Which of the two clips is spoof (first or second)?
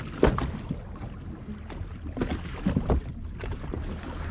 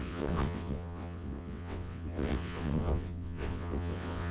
second